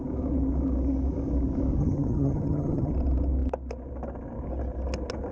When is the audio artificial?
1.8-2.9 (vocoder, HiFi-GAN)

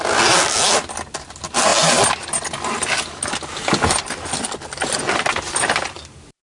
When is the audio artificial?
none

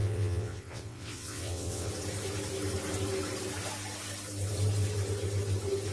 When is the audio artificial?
0.0-1.9 (vocoder, WaveNeXt)

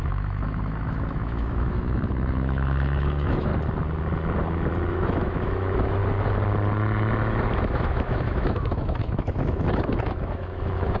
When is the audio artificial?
0.0-3.5 (autoencoder, DAC-VAE); 4.9-6.0; 7.6-11.0

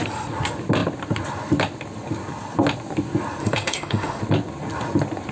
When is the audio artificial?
3.4-4.2 (autoencoder, DAC-VAE)

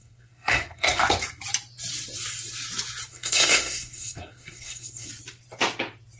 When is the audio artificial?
0.0-1.0 (codec, SNAC); 3.1-5.1

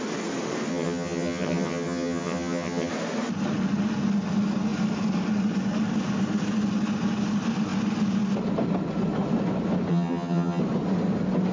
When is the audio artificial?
0.7-2.9 (vocoder, HiFi-GAN); 9.9-10.6